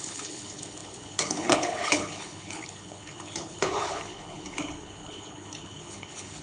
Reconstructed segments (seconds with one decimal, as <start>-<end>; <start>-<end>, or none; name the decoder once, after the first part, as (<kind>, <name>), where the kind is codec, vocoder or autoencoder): 0.0-6.4 (codec, HILCodec)